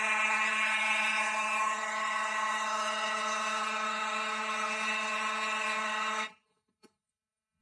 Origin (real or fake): fake